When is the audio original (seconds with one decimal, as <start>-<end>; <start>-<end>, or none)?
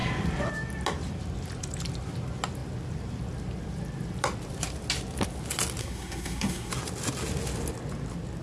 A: 0.0-5.8; 6.7-8.4